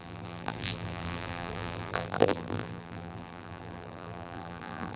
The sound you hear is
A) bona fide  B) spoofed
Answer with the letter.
B